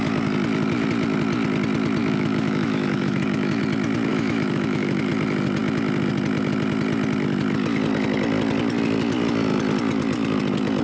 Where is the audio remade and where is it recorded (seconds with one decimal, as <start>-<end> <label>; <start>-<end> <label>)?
0.0-2.0 recorded; 2.0-3.6 remade; 3.6-4.1 recorded; 4.1-5.1 remade; 5.1-10.8 recorded